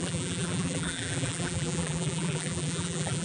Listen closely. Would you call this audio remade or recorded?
remade